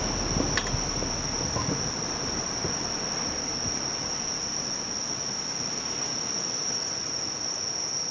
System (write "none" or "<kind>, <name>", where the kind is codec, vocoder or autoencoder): none